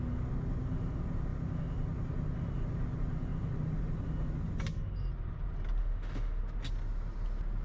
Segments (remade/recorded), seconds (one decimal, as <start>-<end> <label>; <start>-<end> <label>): 0.0-5.8 recorded; 5.8-6.4 remade; 6.4-7.6 recorded